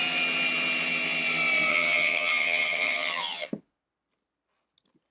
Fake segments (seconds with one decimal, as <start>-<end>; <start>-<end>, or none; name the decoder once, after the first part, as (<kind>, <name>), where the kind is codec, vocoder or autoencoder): 1.7-3.5 (vocoder, HiFi-GAN)